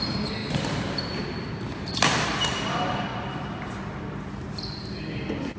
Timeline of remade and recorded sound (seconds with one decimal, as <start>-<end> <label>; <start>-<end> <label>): 0.0-5.6 recorded